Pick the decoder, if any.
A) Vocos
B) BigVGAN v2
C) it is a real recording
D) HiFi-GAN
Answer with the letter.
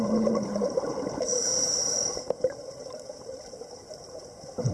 B